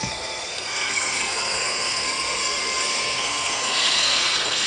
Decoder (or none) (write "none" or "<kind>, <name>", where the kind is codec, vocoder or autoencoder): codec, SNAC